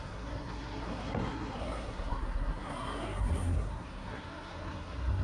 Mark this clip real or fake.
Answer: fake